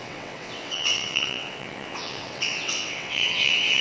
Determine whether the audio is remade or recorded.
remade